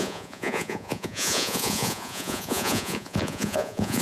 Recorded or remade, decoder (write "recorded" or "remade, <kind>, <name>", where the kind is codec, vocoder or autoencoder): remade, vocoder, Vocos